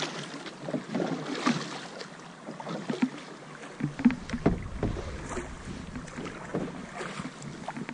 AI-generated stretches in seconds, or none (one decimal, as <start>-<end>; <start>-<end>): none